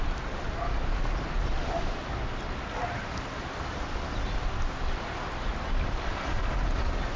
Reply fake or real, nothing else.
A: real